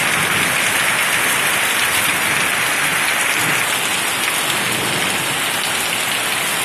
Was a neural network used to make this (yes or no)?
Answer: no